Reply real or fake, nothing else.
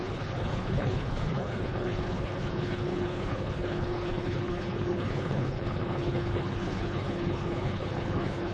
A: fake